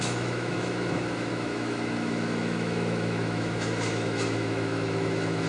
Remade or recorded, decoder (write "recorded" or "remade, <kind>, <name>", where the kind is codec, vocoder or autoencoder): remade, autoencoder, DAC-VAE